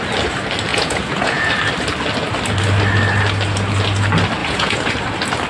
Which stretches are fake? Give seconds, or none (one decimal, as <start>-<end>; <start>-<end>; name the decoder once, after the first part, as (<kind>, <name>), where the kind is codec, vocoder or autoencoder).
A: 0.7-1.5 (vocoder, Vocos); 4.4-4.9